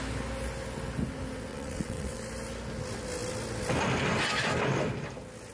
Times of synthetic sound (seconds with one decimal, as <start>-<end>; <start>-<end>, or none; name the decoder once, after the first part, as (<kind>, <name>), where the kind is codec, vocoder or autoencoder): 1.5-2.2 (vocoder, WaveNeXt)